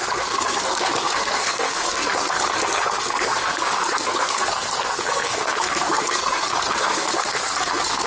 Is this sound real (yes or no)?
no